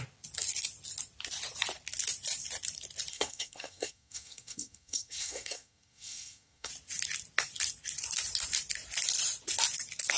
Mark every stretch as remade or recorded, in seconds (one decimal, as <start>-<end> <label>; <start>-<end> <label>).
0.0-3.1 recorded; 3.1-6.7 remade; 6.7-10.2 recorded

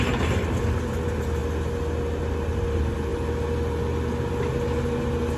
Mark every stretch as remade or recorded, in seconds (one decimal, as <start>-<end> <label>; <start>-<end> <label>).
0.0-5.4 recorded

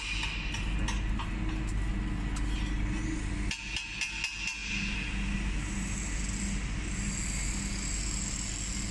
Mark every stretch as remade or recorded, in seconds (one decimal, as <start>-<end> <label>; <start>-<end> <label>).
0.0-8.9 recorded

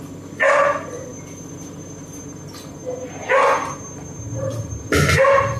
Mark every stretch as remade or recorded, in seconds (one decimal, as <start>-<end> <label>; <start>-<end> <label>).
0.0-5.6 recorded